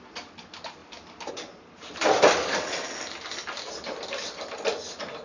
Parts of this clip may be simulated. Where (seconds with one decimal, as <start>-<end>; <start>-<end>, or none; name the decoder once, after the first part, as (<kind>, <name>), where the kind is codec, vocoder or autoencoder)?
none